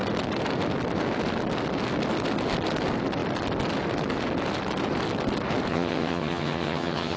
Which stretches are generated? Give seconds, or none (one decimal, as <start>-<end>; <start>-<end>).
5.7-7.2